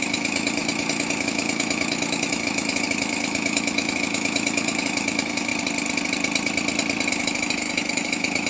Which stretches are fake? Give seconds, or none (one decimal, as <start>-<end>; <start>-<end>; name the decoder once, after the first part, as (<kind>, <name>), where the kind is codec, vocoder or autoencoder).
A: 0.0-5.5 (autoencoder, DAC-VAE); 7.1-8.5